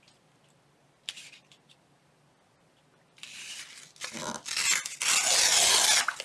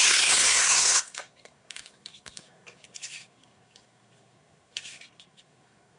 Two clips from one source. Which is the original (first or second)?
first